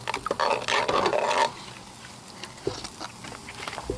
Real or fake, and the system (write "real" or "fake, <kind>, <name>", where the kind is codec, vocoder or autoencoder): real